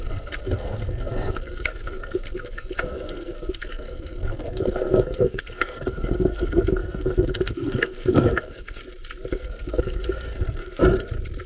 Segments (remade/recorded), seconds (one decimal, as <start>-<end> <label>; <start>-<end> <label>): 0.0-8.8 remade; 8.8-9.3 recorded; 9.3-10.8 remade; 10.8-11.5 recorded

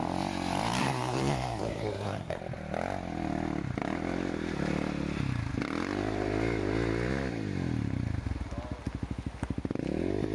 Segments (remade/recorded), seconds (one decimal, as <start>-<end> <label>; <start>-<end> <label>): 0.0-0.8 recorded; 0.8-2.4 remade; 2.4-10.3 recorded

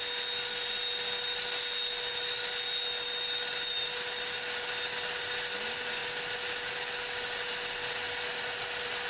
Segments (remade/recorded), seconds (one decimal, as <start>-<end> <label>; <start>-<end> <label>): 0.0-9.1 recorded

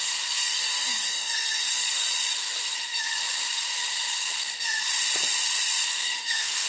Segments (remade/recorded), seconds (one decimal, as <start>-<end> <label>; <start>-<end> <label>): 0.0-2.1 remade; 2.1-5.9 recorded; 5.9-6.7 remade

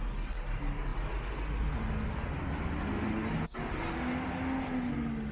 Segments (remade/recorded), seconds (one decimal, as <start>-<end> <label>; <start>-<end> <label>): 0.0-5.3 recorded

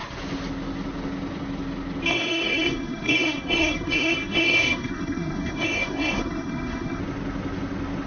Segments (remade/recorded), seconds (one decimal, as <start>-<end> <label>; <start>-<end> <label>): 0.0-2.1 recorded; 2.1-7.0 remade; 7.0-8.1 recorded

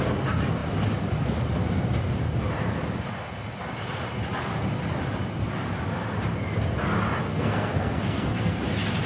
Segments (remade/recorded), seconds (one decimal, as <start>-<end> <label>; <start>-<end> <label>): 0.0-7.3 recorded; 7.3-8.6 remade; 8.6-9.1 recorded

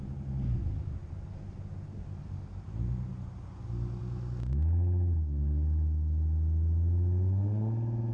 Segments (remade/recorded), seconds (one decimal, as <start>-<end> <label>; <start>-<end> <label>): 0.0-8.1 recorded